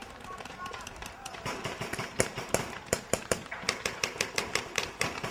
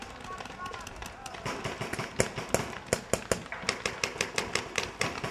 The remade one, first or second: first